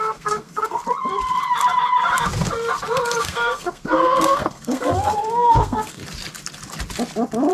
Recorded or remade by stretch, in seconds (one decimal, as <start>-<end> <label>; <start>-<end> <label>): 0.0-0.8 remade; 0.8-3.2 recorded; 3.2-6.0 remade; 6.0-7.5 recorded